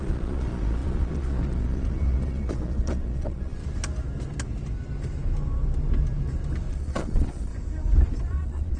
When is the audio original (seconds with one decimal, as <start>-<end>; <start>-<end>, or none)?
3.6-6.7; 7.5-8.3